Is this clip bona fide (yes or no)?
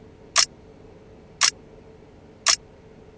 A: yes